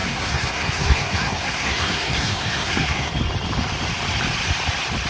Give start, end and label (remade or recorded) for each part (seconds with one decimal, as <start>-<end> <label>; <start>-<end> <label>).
0.0-3.1 remade; 3.1-5.1 recorded